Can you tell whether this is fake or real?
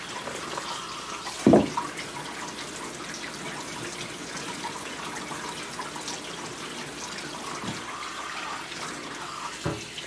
real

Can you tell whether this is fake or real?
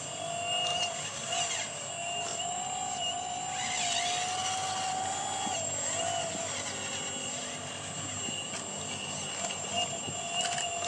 real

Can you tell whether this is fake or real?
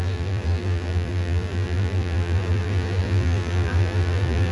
fake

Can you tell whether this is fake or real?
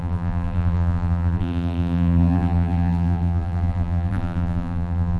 fake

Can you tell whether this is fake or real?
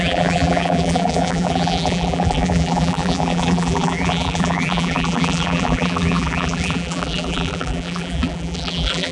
fake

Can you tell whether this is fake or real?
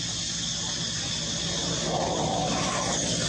real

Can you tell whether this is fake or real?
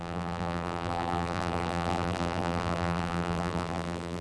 fake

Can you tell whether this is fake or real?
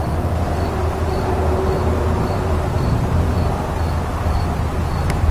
fake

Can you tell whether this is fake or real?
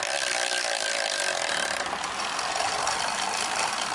fake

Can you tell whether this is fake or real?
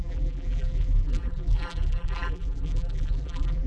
fake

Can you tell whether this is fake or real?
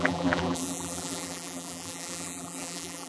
fake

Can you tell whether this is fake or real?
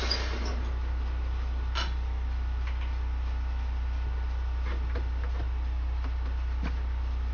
real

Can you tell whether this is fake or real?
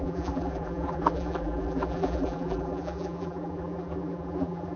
fake